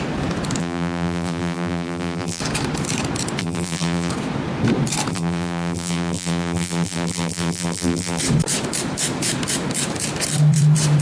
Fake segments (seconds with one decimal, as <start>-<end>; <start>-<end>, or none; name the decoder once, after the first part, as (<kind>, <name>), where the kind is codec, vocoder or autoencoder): 0.6-2.4 (vocoder, BigVGAN v2); 3.4-4.1; 5.1-8.2